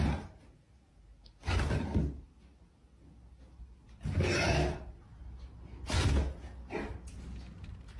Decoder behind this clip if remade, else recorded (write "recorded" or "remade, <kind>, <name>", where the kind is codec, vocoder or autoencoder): recorded